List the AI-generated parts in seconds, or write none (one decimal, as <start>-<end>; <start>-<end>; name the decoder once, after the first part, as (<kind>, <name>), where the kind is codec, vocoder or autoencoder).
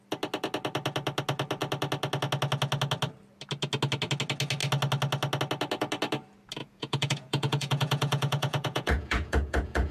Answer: 6.6-9.9 (vocoder, Vocos)